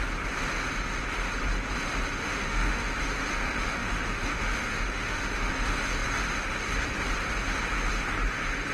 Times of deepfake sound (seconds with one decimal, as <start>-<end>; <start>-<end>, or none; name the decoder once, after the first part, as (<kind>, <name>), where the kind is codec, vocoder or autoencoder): 2.2-2.8 (autoencoder, DAC-VAE); 3.3-5.5